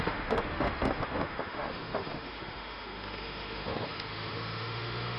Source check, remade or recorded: remade